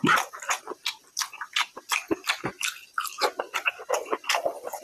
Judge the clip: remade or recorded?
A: recorded